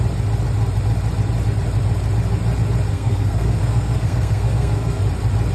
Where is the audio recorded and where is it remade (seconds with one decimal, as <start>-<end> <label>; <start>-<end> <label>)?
0.0-2.9 recorded; 2.9-5.0 remade; 5.0-5.5 recorded